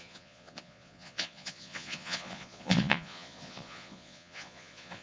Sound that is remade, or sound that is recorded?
remade